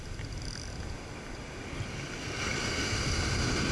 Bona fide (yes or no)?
yes